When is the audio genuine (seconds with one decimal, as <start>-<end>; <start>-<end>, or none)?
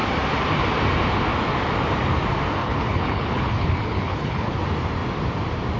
0.0-2.6; 4.6-5.8